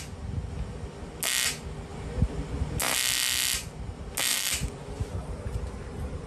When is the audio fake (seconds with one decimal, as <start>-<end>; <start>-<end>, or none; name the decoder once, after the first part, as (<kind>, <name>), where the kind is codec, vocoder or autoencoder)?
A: 4.3-6.3 (vocoder, BigVGAN v2)

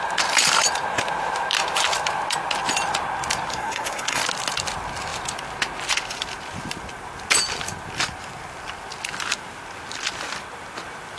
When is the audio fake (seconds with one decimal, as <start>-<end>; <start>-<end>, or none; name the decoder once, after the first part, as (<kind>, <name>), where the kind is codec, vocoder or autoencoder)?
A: 3.5-4.2 (codec, SNAC)

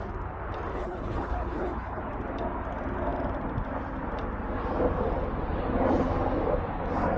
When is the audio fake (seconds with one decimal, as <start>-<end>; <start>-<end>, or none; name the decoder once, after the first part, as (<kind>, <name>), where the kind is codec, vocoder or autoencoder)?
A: 0.7-2.0 (codec, HILCodec)

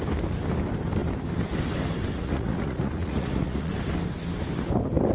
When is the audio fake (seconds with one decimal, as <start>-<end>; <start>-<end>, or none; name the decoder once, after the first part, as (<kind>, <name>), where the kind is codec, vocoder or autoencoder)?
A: 2.2-3.7 (vocoder, Vocos)

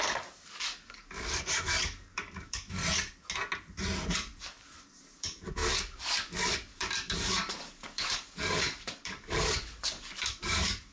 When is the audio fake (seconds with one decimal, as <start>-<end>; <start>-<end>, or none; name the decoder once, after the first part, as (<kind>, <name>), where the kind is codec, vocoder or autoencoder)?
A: 0.0-2.8 (codec, DAC); 4.4-10.9

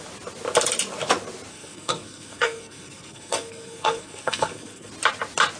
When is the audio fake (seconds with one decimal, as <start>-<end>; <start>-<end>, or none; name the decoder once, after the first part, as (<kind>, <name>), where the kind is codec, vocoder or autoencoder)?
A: 1.5-4.9 (codec, SNAC)

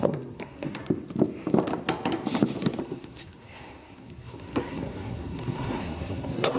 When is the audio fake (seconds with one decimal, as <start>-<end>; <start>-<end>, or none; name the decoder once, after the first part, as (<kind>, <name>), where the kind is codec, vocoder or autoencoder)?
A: 0.0-0.8 (codec, SNAC); 2.8-6.6

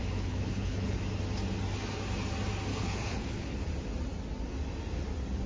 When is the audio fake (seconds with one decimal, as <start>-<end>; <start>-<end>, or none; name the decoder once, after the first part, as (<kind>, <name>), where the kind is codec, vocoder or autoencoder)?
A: 0.0-1.0 (codec, HILCodec); 2.7-3.6